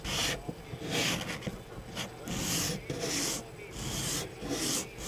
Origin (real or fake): real